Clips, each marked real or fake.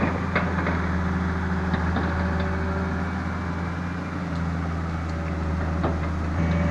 real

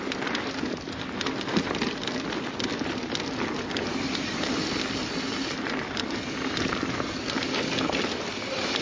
real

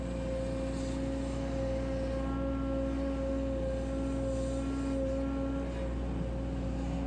real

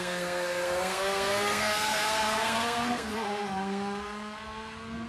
fake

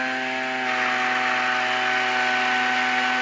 real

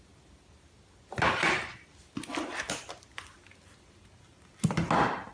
real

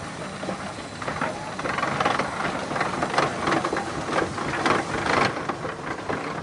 real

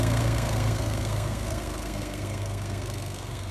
fake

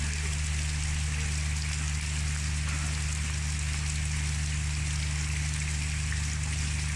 real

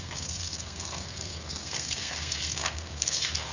fake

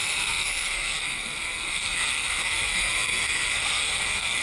fake